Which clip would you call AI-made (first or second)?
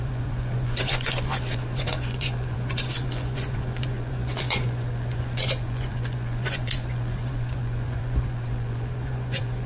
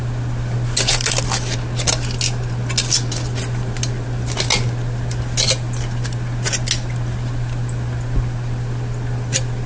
first